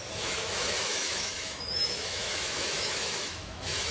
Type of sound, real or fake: fake